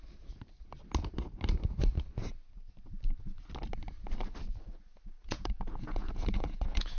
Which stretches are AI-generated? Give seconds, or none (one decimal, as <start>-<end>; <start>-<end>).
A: 5.2-7.0